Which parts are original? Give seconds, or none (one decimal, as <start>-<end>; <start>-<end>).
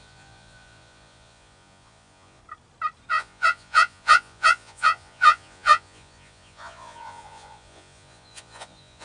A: 2.4-3.1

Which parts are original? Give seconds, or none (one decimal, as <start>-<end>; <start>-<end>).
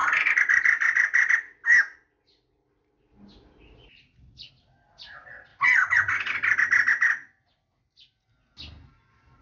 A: 0.0-5.5; 6.1-9.4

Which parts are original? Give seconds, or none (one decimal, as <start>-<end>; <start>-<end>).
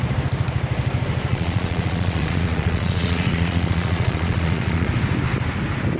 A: 0.0-1.3; 4.9-6.0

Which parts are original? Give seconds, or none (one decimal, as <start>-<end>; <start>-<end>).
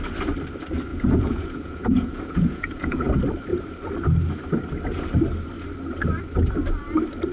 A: 0.0-0.9; 3.1-7.3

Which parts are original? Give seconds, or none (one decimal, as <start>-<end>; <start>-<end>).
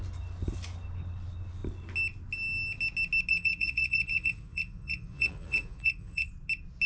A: 0.0-3.3; 6.3-6.9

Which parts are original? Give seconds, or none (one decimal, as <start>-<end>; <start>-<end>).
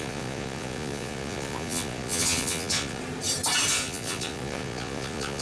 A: 3.0-3.7